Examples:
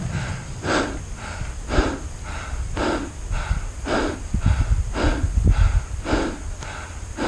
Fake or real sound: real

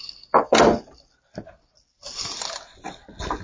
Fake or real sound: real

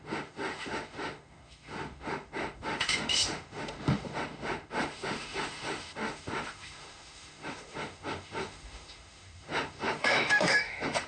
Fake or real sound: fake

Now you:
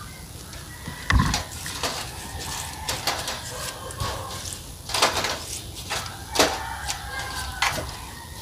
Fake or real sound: real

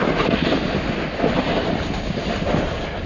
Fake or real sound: real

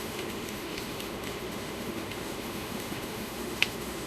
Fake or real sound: fake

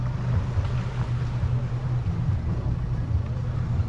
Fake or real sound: real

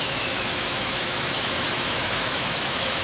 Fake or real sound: fake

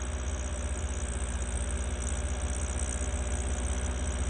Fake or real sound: real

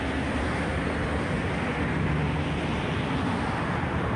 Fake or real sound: real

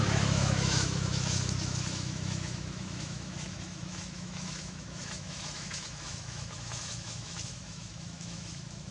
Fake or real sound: fake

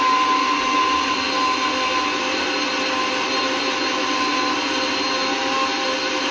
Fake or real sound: real